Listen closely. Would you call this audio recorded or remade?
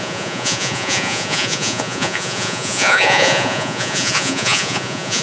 remade